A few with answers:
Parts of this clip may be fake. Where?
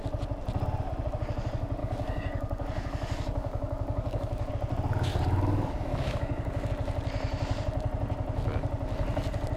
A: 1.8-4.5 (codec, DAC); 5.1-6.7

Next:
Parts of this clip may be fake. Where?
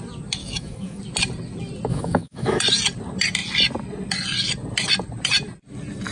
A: 0.4-1.0 (autoencoder, DAC-VAE); 1.9-2.6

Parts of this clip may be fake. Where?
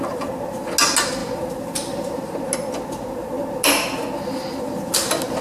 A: none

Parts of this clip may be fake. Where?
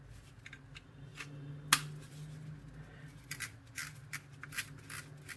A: none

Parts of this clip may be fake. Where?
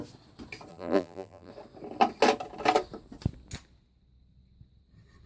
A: 0.7-1.5 (vocoder, BigVGAN v2)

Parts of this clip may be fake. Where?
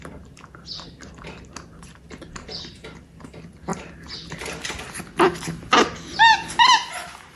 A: none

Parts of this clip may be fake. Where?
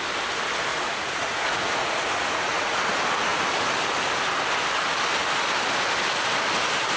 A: 0.7-2.8 (vocoder, Vocos)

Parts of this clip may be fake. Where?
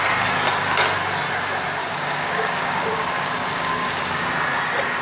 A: 1.8-4.3 (codec, DAC)